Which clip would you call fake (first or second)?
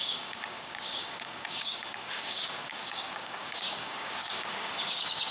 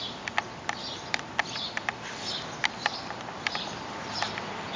first